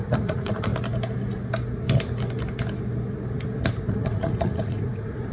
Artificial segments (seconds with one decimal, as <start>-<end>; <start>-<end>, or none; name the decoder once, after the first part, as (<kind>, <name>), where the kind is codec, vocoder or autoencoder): 0.0-0.7 (vocoder, Vocos); 3.9-5.3